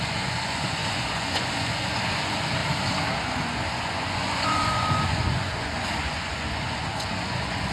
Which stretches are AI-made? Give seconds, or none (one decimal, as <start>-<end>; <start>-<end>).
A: 0.0-2.6; 3.2-7.7